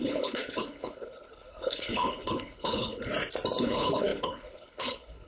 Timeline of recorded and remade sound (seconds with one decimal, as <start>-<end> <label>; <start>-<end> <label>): 0.0-3.1 remade; 3.1-3.6 recorded; 3.6-5.3 remade